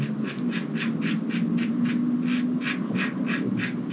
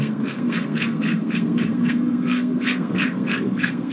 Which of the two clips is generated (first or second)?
second